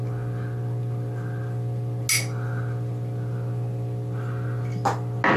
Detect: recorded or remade recorded